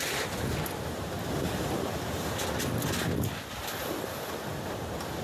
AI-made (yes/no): no